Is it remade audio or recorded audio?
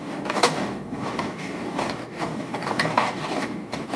remade